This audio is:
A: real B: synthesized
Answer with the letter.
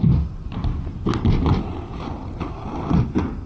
A